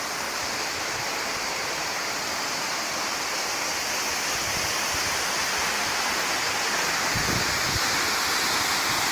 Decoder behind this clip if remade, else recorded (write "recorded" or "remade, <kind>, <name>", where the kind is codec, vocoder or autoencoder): recorded